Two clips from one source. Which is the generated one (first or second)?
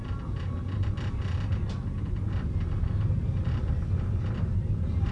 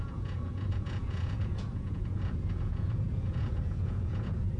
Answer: second